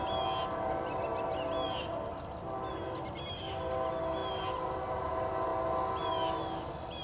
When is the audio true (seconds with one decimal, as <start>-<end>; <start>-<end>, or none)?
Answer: 0.0-7.0